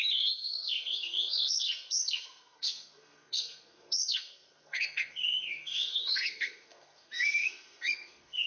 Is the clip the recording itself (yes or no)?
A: no